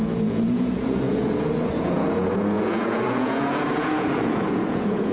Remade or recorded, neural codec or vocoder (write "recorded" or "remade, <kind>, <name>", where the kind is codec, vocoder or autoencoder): remade, vocoder, Vocos